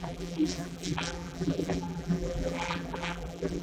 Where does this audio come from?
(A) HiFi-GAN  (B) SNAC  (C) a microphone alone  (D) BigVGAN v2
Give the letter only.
D